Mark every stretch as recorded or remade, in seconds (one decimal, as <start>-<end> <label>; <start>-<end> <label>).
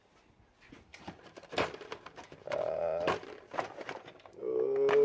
0.0-0.9 recorded; 0.9-3.9 remade; 3.9-5.0 recorded